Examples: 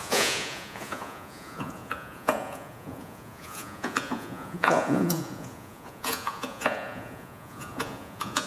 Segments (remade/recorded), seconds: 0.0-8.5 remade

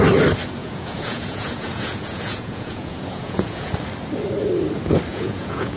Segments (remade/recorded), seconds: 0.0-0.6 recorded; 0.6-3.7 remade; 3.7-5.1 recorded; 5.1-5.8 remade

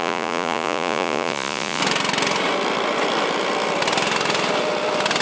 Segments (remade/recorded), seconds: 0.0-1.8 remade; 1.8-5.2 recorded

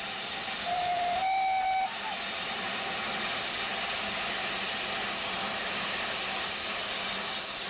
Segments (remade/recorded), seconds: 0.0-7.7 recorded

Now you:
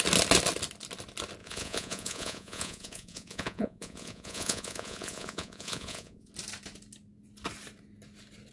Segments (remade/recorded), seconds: 0.0-1.4 recorded; 1.4-6.3 remade; 6.3-8.5 recorded

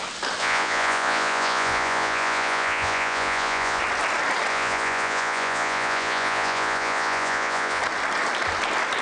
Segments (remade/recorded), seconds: 0.0-0.4 recorded; 0.4-3.8 remade; 3.8-4.5 recorded; 4.5-7.8 remade; 7.8-9.0 recorded